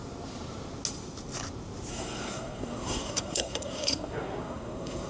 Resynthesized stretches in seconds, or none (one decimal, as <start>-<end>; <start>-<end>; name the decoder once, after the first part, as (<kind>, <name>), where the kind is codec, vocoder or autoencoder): 1.9-5.1 (codec, SNAC)